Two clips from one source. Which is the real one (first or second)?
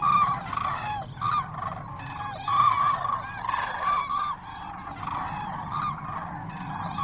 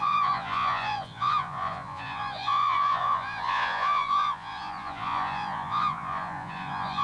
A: first